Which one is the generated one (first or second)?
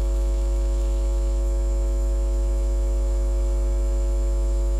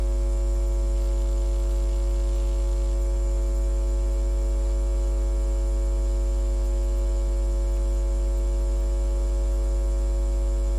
first